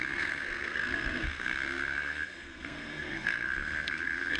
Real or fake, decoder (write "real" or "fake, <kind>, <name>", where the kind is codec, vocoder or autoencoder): fake, codec, SNAC